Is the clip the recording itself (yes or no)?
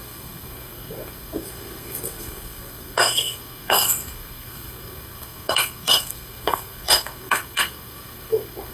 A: no